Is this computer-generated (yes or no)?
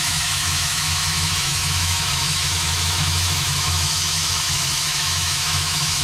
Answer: yes